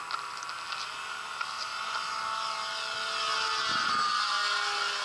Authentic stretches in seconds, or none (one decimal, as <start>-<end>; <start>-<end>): 0.0-5.0